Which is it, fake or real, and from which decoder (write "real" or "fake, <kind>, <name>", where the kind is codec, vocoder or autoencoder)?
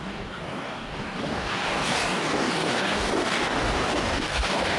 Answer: fake, codec, DAC